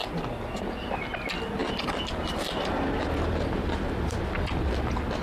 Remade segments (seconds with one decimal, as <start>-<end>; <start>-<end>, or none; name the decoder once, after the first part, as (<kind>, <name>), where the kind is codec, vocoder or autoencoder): none

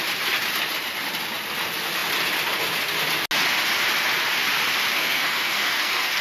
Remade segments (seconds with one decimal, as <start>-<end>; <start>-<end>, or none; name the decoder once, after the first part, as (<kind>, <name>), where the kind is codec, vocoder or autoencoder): 4.9-6.2 (codec, SNAC)